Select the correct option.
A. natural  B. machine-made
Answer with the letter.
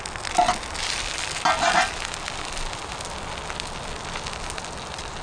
A